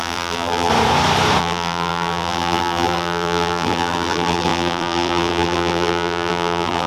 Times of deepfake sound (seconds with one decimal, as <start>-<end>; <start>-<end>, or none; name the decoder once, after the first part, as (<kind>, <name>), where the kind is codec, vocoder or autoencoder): 0.0-0.7 (vocoder, BigVGAN v2); 1.4-6.9